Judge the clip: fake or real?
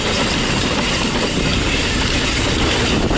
real